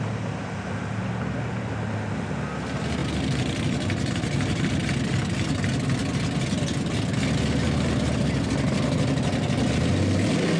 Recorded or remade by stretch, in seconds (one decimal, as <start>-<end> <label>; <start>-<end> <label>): 0.0-10.6 recorded